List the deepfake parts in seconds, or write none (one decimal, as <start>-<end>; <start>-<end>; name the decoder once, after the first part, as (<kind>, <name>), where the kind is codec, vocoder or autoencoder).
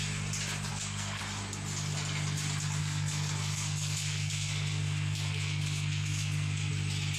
0.7-1.2 (codec, SNAC); 2.8-6.7